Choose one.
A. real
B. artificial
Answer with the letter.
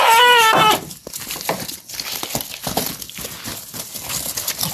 A